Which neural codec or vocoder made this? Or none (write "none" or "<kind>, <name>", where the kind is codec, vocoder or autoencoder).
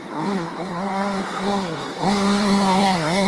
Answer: codec, SNAC